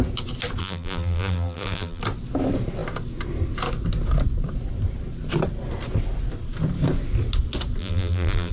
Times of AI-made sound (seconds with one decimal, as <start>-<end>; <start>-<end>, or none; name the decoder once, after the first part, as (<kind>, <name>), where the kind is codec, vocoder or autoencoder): 0.6-2.0 (vocoder, BigVGAN v2); 7.8-8.5